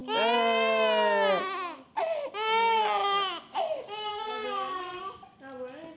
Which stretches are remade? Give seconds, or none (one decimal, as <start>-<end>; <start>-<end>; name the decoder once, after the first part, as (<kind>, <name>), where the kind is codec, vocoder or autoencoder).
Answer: 4.1-5.0 (codec, SNAC)

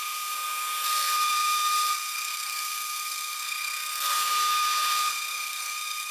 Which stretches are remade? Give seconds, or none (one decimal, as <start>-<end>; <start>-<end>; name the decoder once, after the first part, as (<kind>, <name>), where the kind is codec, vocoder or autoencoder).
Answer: 0.0-6.1 (codec, SNAC)